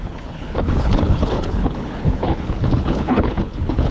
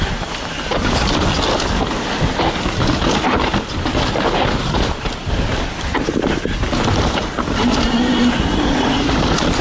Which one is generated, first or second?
first